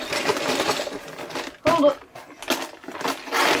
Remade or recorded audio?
recorded